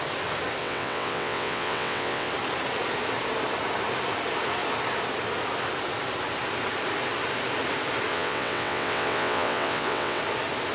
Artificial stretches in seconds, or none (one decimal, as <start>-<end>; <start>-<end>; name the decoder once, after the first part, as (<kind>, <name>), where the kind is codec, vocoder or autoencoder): 0.6-2.3 (vocoder, WaveNeXt); 8.1-10.2

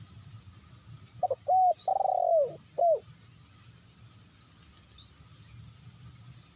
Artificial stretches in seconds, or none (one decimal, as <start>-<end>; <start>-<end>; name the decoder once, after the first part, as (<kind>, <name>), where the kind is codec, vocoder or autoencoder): none

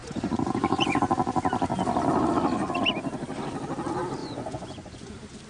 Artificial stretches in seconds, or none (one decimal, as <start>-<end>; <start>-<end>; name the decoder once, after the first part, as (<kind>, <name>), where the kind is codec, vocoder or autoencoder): 0.0-1.0 (vocoder, Vocos); 4.2-5.1

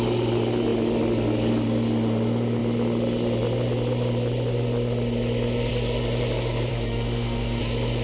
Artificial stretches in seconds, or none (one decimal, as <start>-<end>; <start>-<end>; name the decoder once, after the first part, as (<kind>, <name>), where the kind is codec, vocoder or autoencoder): 6.7-7.6 (autoencoder, DAC-VAE)

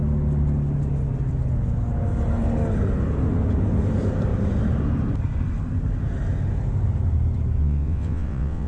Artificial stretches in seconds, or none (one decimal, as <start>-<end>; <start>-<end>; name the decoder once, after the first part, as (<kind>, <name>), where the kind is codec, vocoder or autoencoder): 7.6-8.7 (vocoder, WaveNeXt)

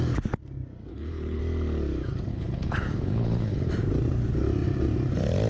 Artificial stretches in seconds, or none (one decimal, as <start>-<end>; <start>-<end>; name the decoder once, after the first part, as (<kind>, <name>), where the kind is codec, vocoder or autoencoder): 0.9-1.4 (codec, HILCodec); 2.3-3.7

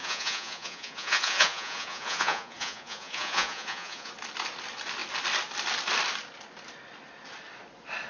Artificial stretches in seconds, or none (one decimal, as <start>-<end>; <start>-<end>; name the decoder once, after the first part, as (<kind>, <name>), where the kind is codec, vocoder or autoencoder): 0.0-4.1 (vocoder, Vocos)